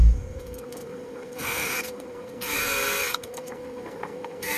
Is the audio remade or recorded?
remade